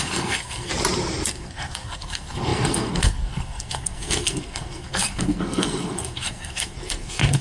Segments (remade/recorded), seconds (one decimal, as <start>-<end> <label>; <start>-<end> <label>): 0.0-0.7 remade; 0.7-1.3 recorded; 1.3-7.4 remade